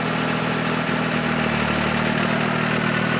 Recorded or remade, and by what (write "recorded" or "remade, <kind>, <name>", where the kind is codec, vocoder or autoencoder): recorded